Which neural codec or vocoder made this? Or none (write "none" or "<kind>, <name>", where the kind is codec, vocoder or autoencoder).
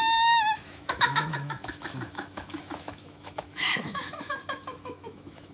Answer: autoencoder, DAC-VAE